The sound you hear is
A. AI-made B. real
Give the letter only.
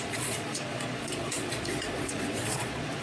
A